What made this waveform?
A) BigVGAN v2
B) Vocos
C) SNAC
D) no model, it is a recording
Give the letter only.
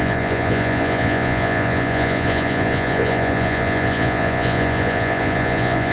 B